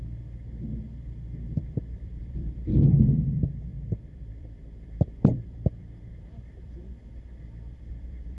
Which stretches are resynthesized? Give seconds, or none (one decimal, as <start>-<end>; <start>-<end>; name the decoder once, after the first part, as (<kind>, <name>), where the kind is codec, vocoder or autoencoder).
0.0-8.4 (vocoder, BigVGAN v2)